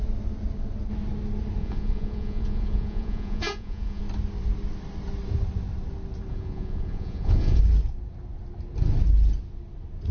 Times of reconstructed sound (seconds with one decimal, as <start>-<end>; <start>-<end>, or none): 1.6-4.0; 6.3-7.6